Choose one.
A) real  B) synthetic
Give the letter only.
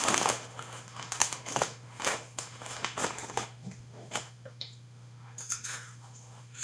B